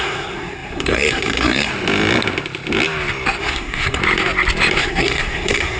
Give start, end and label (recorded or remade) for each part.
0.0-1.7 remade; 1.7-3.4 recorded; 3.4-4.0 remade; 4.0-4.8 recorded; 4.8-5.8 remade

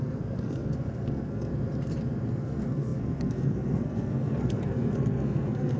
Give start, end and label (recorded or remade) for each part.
0.0-1.5 remade; 1.5-2.3 recorded; 2.3-5.8 remade

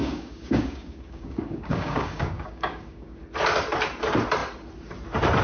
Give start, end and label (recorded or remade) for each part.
0.0-3.2 remade; 3.2-5.4 recorded

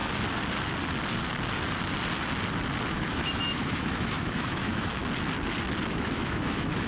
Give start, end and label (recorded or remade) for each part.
0.0-2.9 recorded; 2.9-5.0 remade; 5.0-5.9 recorded; 5.9-6.9 remade

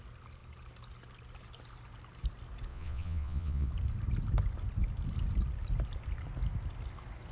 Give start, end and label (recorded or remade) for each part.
0.0-2.7 recorded; 2.7-3.7 remade; 3.7-7.3 recorded